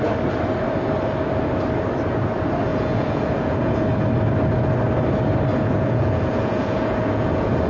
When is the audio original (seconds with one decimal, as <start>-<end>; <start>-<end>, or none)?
0.0-2.7; 3.7-5.5